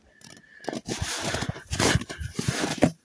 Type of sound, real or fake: fake